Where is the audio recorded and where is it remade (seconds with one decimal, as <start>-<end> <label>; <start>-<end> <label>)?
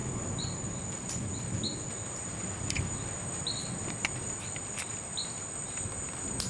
0.0-6.5 recorded